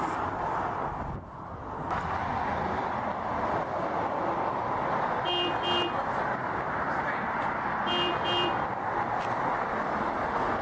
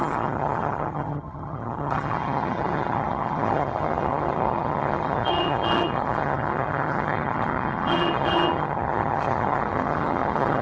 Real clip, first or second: first